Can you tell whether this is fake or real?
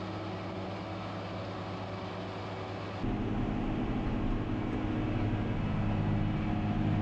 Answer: real